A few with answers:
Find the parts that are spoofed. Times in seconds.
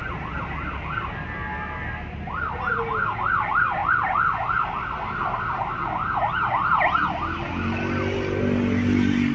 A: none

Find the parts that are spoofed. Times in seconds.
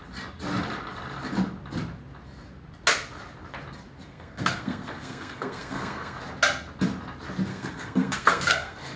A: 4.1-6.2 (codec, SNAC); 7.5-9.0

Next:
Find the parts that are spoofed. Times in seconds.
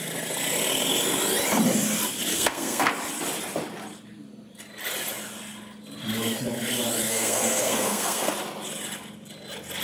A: 2.3-2.9 (codec, SNAC); 7.0-8.3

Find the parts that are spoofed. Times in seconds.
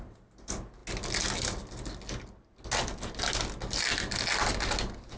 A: none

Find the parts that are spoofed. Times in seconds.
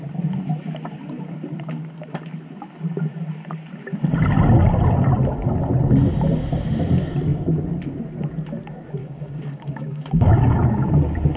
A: 9.0-10.9 (codec, DAC)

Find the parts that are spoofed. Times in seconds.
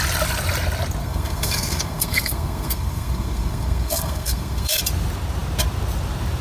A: 1.0-4.8 (codec, SNAC)